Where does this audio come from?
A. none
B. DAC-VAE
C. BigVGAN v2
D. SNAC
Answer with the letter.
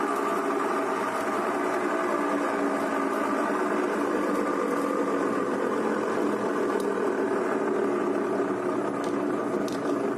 A